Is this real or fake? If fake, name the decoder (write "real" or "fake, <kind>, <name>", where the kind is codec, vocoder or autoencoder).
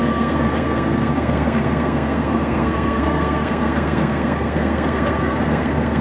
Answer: fake, codec, SNAC